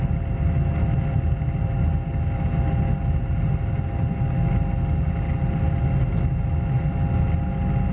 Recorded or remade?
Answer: recorded